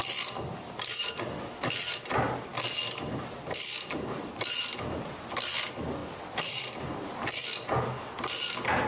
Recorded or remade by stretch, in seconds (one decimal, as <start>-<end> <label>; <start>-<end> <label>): 0.0-6.0 recorded; 6.0-7.2 remade; 7.2-8.9 recorded